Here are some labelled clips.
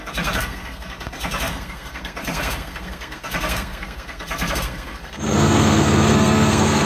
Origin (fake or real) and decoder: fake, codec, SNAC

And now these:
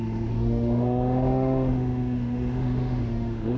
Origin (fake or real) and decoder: fake, autoencoder, DAC-VAE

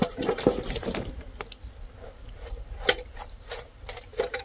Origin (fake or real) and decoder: real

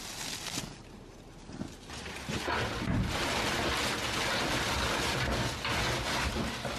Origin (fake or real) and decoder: real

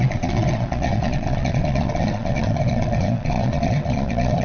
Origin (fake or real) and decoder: fake, vocoder, Vocos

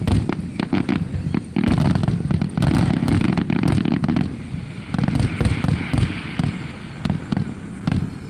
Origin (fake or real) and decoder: real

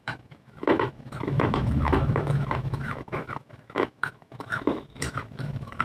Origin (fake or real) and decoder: fake, autoencoder, DAC-VAE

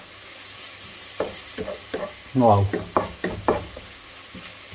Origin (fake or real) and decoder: real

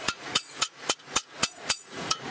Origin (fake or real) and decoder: fake, vocoder, Vocos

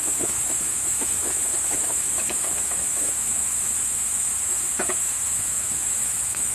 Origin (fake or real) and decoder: fake, autoencoder, DAC-VAE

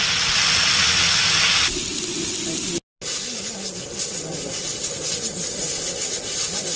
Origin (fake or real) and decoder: real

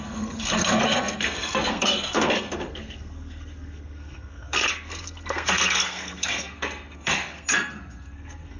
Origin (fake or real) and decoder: fake, codec, SNAC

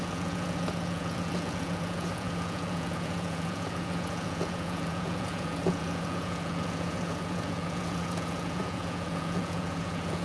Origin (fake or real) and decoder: fake, vocoder, Vocos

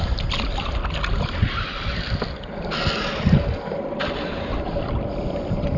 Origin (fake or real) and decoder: real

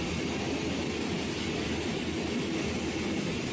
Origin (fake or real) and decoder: real